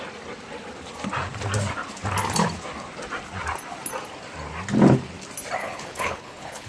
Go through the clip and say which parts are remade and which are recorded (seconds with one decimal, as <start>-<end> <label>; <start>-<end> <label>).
0.0-5.6 recorded; 5.6-6.7 remade